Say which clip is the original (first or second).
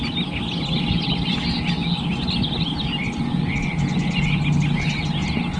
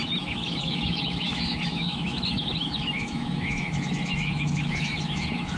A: first